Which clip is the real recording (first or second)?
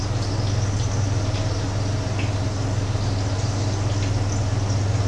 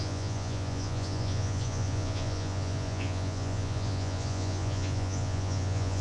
first